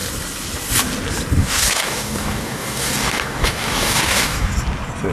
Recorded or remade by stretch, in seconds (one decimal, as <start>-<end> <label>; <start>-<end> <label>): 0.0-1.4 recorded; 1.4-4.5 remade; 4.5-5.1 recorded